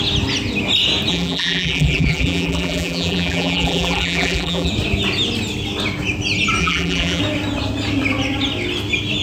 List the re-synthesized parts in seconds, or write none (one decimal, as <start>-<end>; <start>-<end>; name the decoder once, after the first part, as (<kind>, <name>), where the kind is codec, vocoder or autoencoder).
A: 1.1-4.7 (vocoder, BigVGAN v2); 6.6-7.2